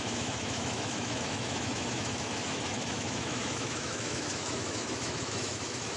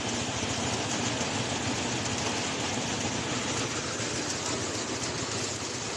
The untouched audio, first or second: second